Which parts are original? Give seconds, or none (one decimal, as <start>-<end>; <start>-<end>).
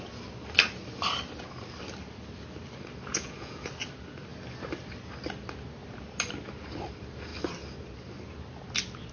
0.0-3.1; 3.7-9.1